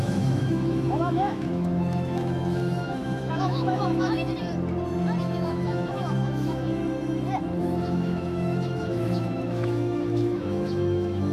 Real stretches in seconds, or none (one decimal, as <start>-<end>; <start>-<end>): 4.3-5.2; 6.8-7.6